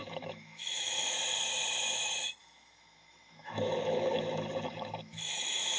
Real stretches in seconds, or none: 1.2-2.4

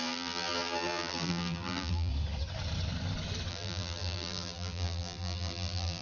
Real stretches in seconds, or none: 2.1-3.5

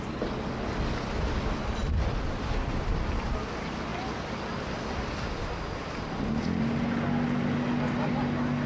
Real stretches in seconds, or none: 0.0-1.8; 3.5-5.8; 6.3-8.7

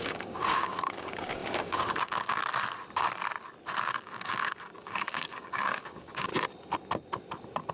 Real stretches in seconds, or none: 2.4-3.8; 6.3-7.7

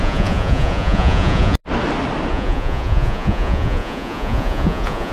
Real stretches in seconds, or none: 1.6-2.3

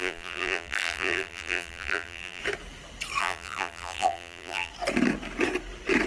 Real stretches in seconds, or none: 2.4-3.2; 4.7-6.1